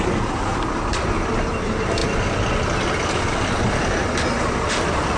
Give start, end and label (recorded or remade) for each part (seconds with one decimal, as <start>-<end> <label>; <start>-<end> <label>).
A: 0.0-5.2 recorded